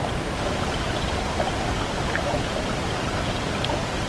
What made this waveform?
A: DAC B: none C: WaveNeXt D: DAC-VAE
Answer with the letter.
B